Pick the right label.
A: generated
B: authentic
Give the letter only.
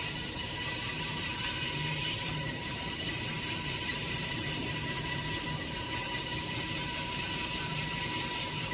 A